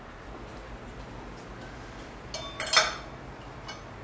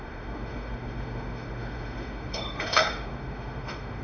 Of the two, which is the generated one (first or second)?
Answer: second